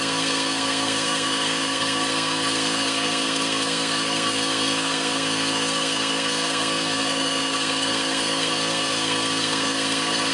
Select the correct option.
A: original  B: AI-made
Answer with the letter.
B